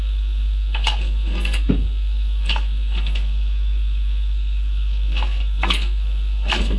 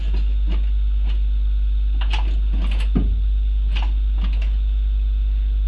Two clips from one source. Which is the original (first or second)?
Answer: second